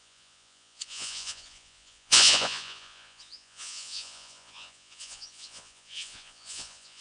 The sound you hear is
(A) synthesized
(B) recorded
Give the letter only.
A